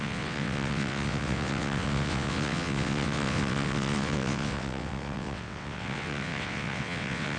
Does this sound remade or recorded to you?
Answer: remade